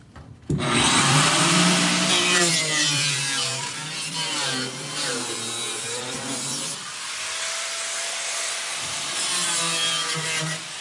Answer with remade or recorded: remade